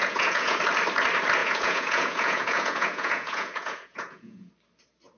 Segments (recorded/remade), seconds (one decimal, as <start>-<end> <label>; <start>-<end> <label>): 0.0-0.6 remade; 0.6-1.4 recorded; 1.4-4.5 remade; 4.5-5.2 recorded